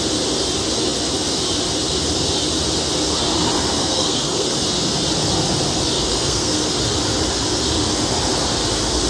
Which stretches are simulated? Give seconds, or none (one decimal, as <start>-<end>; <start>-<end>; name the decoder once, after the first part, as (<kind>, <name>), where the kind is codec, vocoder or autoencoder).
3.8-4.5 (codec, SNAC); 6.1-6.6